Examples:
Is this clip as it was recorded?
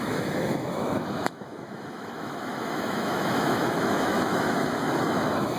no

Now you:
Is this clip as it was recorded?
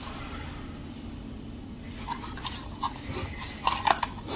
yes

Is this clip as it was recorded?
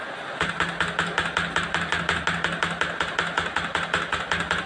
yes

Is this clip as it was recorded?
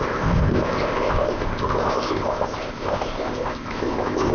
no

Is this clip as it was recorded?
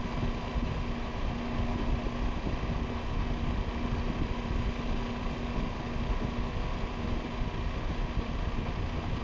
yes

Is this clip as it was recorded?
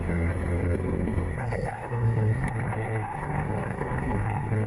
no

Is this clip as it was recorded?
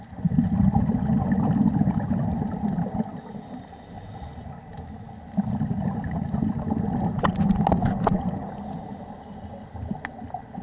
yes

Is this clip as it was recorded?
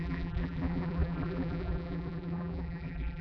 no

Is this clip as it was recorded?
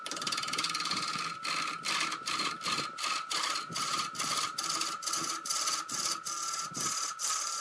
yes